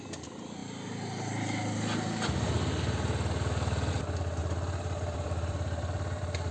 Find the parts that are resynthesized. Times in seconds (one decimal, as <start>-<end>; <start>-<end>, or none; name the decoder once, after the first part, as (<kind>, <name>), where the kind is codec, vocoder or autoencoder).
4.4-6.5 (vocoder, BigVGAN v2)

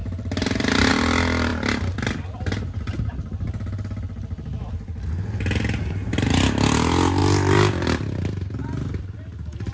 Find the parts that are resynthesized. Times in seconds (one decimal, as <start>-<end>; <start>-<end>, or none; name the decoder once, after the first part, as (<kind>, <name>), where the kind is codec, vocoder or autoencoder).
0.0-0.9 (vocoder, BigVGAN v2); 7.2-8.6

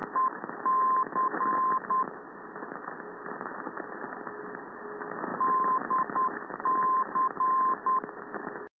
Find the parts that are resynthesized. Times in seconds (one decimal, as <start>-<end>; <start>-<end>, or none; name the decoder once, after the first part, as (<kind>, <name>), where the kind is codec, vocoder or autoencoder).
5.3-7.7 (vocoder, BigVGAN v2)

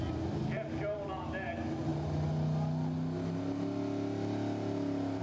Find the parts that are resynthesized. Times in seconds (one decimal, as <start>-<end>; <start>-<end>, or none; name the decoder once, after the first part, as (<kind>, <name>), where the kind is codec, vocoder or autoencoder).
none

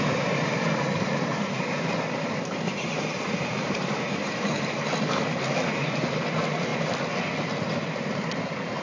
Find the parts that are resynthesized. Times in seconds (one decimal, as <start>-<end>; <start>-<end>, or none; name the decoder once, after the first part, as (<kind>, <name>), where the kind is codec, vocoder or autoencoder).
0.0-6.7 (vocoder, BigVGAN v2); 7.7-8.8

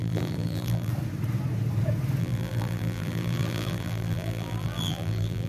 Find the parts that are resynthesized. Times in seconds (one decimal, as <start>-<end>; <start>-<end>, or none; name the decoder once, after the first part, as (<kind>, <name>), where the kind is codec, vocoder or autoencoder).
0.0-0.9 (vocoder, BigVGAN v2); 2.2-5.5

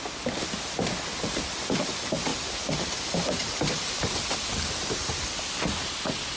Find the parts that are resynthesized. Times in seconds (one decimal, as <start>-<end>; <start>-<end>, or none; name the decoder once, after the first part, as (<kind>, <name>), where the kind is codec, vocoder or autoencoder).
2.3-3.8 (vocoder, BigVGAN v2); 5.0-5.7

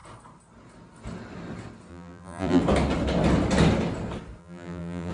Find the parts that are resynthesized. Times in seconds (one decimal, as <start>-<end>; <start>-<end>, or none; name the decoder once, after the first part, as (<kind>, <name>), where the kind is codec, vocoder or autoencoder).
1.9-2.6 (vocoder, BigVGAN v2); 4.4-5.1